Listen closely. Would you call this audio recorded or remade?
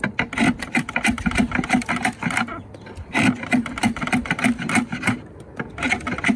recorded